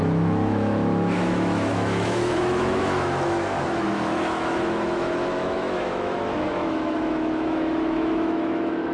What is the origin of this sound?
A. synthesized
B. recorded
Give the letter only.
A